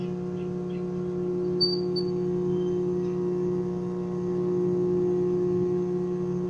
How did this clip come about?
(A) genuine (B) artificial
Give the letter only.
A